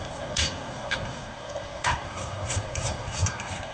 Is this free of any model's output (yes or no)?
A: no